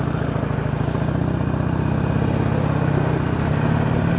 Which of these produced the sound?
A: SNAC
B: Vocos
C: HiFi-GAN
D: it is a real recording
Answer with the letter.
D